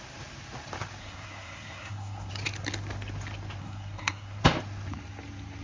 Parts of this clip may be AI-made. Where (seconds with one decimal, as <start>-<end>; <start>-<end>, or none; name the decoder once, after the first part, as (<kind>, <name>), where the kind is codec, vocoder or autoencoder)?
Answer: 1.0-2.3 (codec, SNAC); 3.6-4.4